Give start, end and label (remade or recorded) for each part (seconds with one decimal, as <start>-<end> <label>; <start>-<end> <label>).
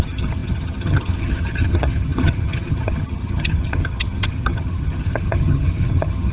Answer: 0.0-6.3 remade